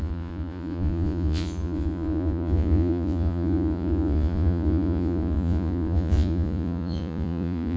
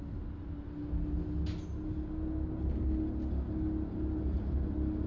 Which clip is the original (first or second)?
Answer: second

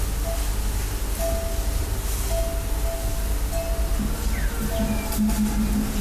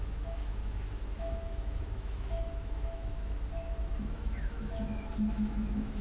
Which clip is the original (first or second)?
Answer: first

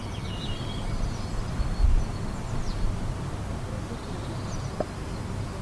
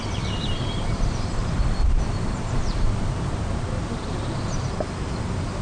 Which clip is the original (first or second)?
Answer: first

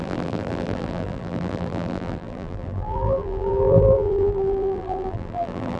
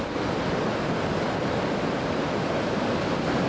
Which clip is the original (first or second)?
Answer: second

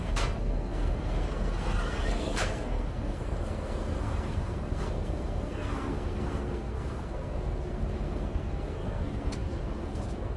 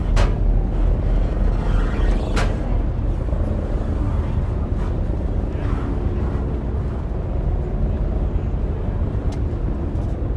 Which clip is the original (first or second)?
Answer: second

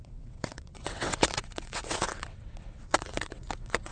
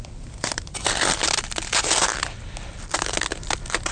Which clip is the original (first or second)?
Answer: second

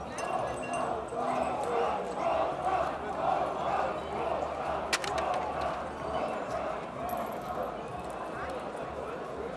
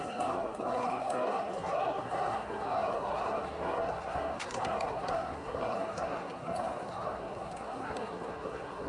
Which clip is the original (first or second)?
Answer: first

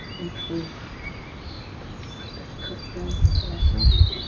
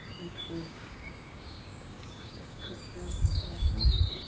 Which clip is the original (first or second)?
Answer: first